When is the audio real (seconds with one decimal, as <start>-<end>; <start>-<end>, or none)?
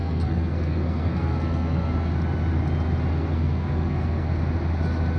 1.9-3.1; 4.3-5.2